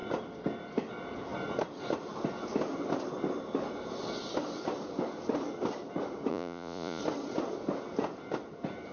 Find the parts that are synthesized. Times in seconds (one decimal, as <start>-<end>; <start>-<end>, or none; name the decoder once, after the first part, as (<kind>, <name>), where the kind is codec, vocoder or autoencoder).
6.3-7.0 (vocoder, Vocos)